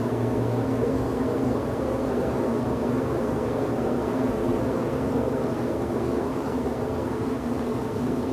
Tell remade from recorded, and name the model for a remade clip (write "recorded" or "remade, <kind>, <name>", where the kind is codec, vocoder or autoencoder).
remade, codec, SNAC